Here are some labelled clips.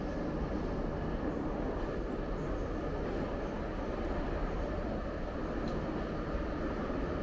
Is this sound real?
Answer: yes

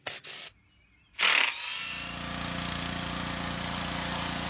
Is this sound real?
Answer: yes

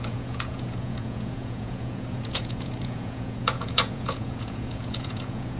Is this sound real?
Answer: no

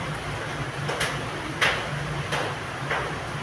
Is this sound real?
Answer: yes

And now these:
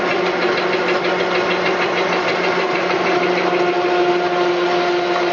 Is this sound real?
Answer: yes